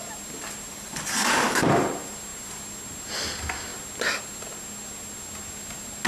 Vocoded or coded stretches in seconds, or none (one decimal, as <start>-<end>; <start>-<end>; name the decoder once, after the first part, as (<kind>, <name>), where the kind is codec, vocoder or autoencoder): 0.7-1.7 (vocoder, BigVGAN v2)